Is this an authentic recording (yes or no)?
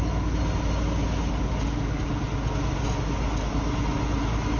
yes